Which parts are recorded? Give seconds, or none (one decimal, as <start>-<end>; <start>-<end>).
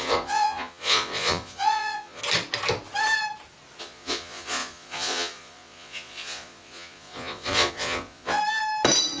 2.2-3.8; 8.4-9.2